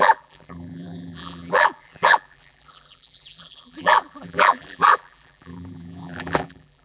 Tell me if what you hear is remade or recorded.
remade